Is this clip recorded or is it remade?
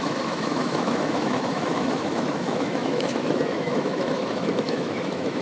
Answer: remade